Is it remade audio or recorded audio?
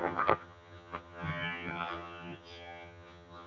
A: remade